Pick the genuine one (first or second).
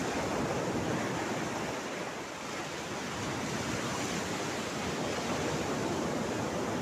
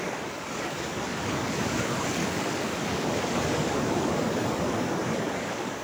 first